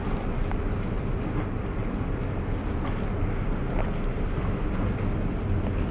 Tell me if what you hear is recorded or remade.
recorded